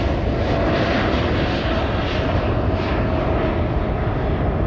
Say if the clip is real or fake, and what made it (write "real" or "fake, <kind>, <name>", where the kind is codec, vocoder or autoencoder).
real